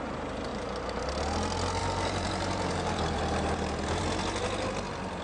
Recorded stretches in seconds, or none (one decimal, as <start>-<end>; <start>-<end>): 0.0-0.5; 1.1-1.8; 4.0-5.2